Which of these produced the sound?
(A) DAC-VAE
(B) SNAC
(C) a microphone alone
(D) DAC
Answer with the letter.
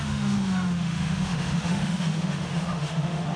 A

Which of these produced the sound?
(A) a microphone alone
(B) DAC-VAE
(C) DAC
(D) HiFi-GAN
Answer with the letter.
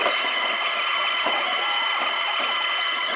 A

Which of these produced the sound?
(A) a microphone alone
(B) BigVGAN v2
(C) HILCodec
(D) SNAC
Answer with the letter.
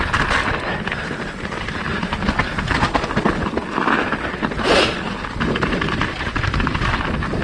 A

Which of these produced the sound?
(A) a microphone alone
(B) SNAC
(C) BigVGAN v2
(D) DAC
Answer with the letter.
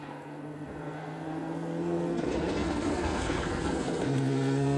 B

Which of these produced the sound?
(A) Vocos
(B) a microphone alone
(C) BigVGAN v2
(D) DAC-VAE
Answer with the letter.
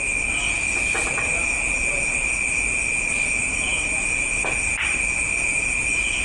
B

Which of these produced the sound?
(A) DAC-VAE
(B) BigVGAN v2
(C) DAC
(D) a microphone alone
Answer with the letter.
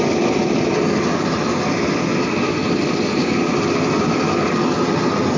D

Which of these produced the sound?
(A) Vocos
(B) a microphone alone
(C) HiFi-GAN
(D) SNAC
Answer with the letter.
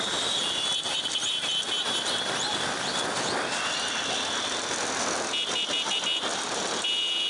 B